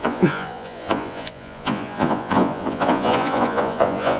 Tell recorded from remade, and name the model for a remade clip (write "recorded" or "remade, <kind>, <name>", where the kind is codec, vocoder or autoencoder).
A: remade, vocoder, Vocos